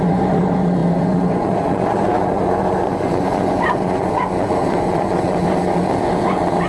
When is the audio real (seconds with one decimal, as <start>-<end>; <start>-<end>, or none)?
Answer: none